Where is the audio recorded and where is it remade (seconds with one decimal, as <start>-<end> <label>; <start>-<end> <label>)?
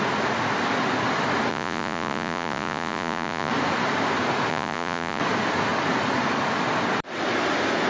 0.0-1.5 recorded; 1.5-3.5 remade; 3.5-4.5 recorded; 4.5-5.2 remade; 5.2-7.9 recorded